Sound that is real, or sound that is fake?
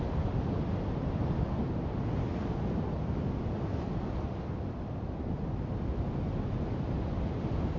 real